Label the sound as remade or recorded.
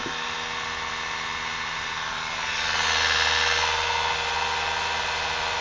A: recorded